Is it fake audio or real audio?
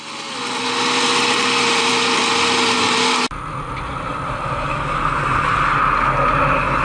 real